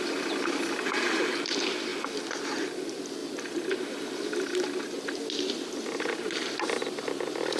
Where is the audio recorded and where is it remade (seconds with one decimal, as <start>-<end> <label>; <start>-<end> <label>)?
0.0-7.6 recorded